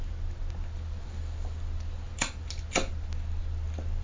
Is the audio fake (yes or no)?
no